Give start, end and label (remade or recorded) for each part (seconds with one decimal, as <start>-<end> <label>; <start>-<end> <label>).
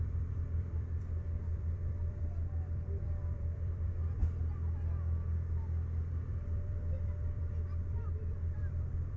0.0-4.2 remade; 4.2-6.2 recorded; 6.2-9.2 remade